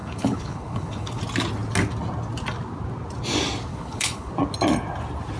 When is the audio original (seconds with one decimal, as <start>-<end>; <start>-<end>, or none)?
1.2-3.7; 4.3-5.4